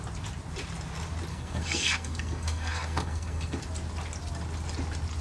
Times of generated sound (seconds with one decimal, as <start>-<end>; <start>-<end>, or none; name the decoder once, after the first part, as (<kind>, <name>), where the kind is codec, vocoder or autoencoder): 1.3-3.6 (codec, SNAC)